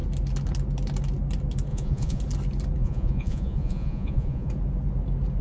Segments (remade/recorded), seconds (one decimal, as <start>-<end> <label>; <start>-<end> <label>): 0.0-1.7 recorded; 1.7-2.2 remade; 2.2-2.8 recorded; 2.8-4.5 remade; 4.5-5.4 recorded